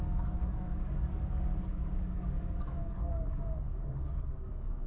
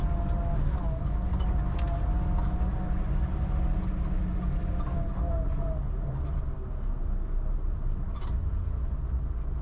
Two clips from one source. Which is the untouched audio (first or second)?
second